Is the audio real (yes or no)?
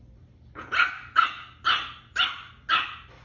yes